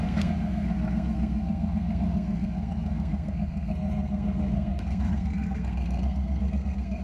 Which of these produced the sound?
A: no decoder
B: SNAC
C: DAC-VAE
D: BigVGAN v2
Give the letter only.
B